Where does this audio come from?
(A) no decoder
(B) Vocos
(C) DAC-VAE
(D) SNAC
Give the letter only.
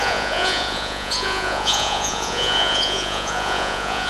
B